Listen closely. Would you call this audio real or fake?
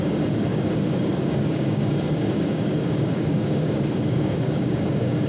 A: fake